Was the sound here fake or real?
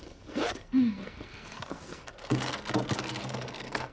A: fake